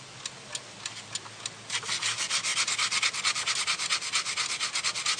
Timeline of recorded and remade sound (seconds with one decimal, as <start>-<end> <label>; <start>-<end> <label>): 0.0-5.2 recorded